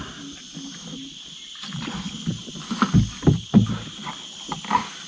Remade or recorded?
recorded